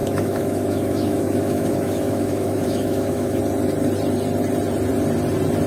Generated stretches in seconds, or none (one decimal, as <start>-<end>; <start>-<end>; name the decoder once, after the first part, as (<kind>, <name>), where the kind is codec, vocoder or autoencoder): 0.0-3.4 (autoencoder, DAC-VAE)